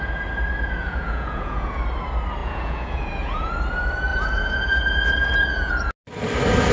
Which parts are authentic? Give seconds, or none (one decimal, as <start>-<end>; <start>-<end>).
0.0-0.8; 1.8-2.4; 3.5-4.1; 5.7-6.7